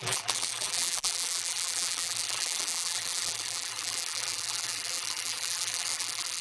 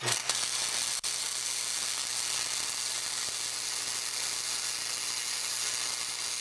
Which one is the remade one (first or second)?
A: first